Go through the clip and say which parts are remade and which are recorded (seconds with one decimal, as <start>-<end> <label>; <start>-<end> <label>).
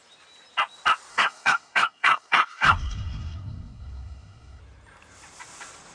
0.0-1.1 recorded; 1.1-4.6 remade; 4.6-5.9 recorded